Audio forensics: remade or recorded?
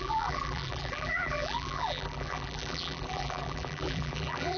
remade